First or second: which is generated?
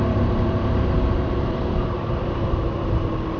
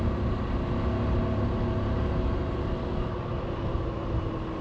first